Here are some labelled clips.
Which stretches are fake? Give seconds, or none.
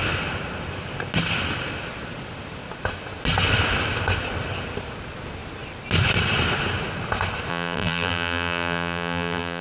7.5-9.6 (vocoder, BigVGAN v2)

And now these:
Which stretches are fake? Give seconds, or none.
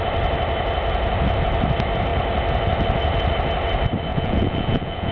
4.1-5.1 (vocoder, Vocos)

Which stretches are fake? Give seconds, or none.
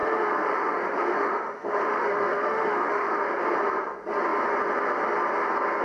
0.0-3.5 (autoencoder, DAC-VAE)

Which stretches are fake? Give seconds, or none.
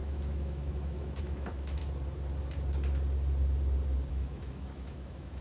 0.0-1.8 (autoencoder, DAC-VAE); 4.1-5.4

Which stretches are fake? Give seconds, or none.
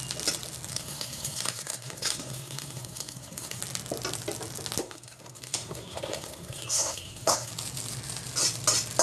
0.7-3.6 (codec, SNAC); 4.8-7.5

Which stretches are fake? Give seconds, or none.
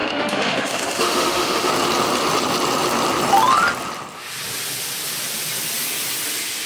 0.0-1.7 (autoencoder, DAC-VAE)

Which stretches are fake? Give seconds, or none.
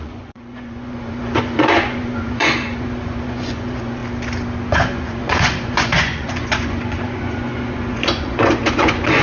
0.0-4.0 (vocoder, Vocos); 4.7-9.2